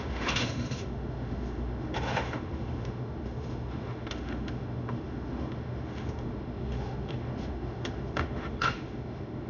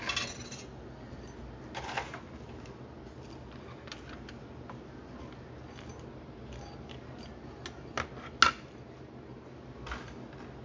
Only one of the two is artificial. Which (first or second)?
first